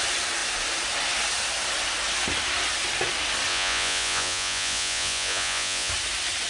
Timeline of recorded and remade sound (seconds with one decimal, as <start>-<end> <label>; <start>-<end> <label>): 0.0-3.5 recorded; 3.5-5.9 remade; 5.9-6.5 recorded